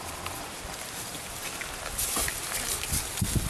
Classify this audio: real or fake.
real